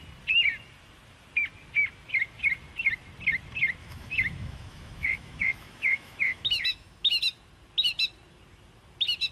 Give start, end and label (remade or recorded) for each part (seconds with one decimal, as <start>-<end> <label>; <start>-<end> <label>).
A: 0.0-3.8 recorded; 3.8-7.2 remade; 7.2-9.3 recorded